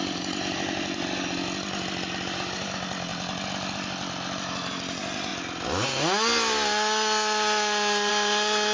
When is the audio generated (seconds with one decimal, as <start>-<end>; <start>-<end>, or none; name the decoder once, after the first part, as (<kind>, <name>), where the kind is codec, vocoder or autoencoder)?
none